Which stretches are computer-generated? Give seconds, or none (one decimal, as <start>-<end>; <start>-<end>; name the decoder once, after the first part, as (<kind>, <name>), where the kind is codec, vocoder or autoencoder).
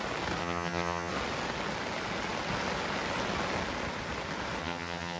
0.4-1.1 (vocoder, HiFi-GAN); 4.6-5.2